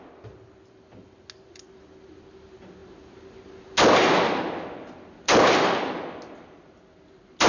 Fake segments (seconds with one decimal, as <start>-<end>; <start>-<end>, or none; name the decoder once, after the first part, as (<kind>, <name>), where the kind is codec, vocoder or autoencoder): none